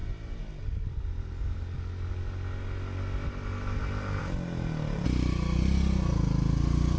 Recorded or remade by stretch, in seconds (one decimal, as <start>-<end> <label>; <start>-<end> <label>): 0.0-7.0 recorded